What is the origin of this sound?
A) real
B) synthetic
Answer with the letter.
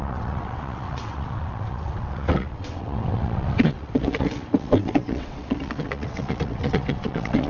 B